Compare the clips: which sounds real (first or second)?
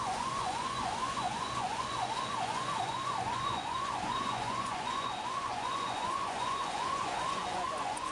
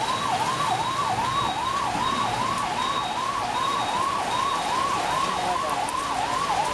second